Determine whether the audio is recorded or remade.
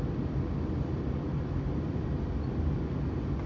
recorded